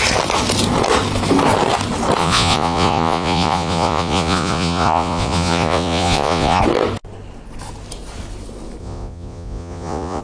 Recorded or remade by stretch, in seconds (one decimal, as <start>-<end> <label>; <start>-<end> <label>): 0.0-2.2 recorded; 2.2-6.6 remade; 6.6-8.8 recorded; 8.8-10.2 remade